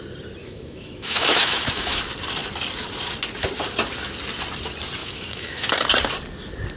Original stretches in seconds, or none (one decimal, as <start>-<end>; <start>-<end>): 0.0-0.4; 2.0-5.0; 5.7-6.8

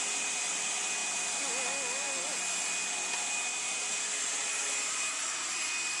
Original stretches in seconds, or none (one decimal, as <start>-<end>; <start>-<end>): 0.0-6.0

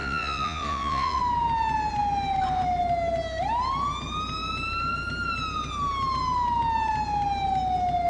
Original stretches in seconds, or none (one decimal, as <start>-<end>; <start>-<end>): 1.2-8.1

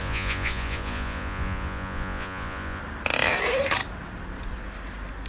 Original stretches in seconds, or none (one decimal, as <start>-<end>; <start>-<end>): 2.8-5.3

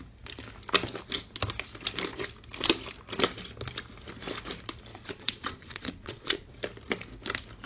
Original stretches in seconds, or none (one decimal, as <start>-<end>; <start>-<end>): 0.0-4.9; 6.5-7.7